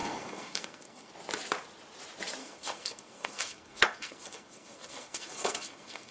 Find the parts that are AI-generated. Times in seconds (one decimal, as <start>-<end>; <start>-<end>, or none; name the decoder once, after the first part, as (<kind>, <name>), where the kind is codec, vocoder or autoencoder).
0.0-1.1 (codec, SNAC); 2.4-6.1